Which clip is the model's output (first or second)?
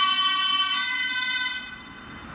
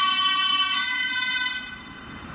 second